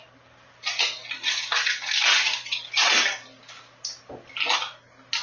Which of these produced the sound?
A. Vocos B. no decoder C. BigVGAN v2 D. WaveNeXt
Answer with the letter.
B